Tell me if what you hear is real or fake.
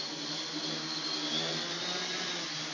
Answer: real